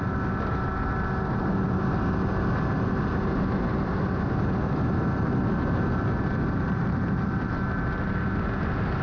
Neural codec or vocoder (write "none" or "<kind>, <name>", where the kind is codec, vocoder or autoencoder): none